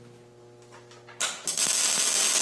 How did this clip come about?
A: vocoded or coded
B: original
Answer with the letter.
B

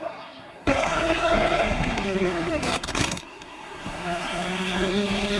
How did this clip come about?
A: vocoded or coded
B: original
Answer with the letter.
A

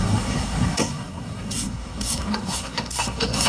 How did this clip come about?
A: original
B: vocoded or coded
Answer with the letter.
B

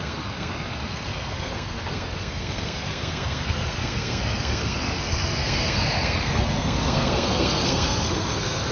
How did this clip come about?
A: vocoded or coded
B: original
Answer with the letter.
A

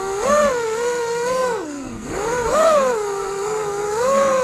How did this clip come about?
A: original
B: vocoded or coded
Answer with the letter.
B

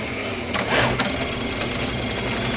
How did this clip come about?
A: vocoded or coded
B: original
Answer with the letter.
B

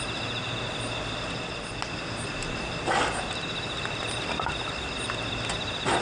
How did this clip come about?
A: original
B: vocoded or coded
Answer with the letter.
A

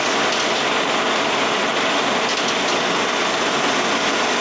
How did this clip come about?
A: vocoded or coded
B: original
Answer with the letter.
B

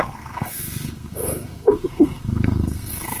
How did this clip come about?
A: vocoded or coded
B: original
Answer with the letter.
A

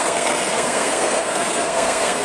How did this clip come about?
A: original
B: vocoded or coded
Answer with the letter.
B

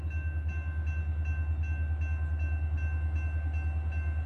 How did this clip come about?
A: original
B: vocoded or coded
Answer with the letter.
A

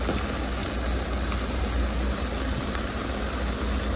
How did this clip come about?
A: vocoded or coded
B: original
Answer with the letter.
B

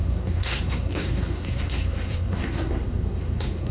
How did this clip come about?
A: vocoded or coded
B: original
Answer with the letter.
A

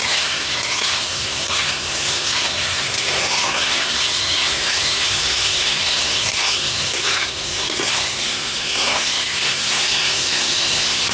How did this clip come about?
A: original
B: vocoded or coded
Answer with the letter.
B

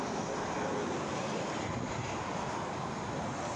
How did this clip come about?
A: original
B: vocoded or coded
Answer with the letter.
A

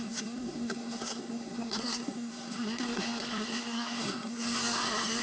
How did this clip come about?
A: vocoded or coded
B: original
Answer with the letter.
A